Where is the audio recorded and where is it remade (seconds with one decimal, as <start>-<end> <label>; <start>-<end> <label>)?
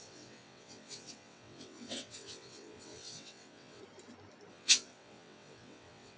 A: 0.0-3.8 remade; 3.8-4.5 recorded; 4.5-6.2 remade